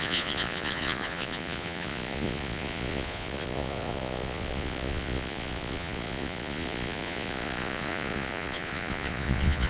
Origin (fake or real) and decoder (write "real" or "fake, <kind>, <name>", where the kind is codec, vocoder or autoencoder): fake, vocoder, Vocos